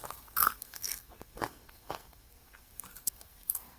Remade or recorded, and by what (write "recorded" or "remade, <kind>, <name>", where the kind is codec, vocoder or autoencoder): remade, codec, SNAC